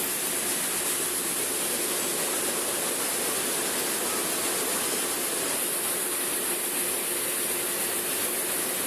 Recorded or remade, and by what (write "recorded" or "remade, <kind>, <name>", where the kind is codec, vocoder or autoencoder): recorded